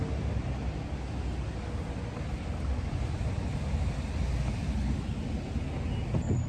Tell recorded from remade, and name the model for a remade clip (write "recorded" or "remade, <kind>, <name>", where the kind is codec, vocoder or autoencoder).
recorded